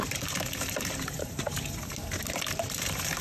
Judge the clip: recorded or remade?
remade